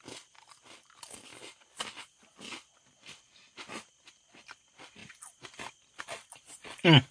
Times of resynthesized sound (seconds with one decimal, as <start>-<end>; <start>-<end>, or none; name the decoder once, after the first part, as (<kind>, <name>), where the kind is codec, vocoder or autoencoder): none